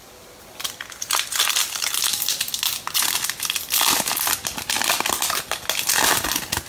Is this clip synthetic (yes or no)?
no